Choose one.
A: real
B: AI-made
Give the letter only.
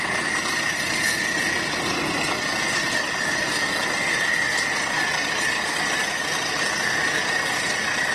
A